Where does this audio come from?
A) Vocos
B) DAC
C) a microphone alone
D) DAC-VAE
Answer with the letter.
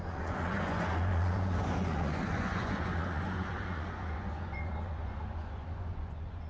A